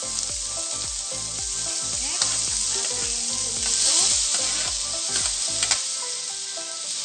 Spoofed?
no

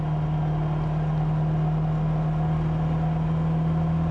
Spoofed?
no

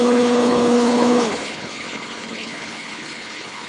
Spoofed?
yes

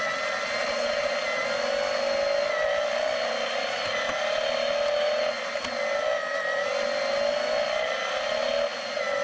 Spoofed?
no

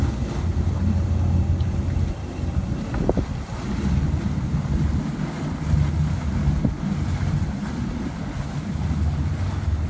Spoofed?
no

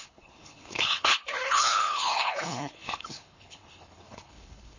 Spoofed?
yes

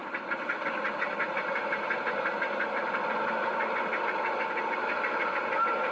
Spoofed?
no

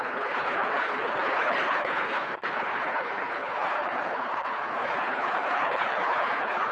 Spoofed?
yes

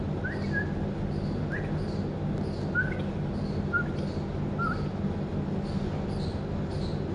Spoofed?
no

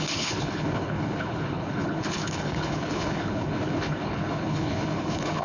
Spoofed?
yes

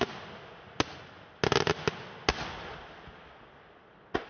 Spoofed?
no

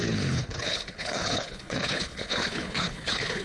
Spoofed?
yes